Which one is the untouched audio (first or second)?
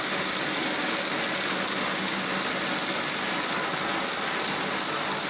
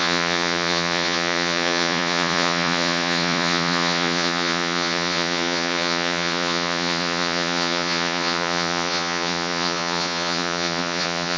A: first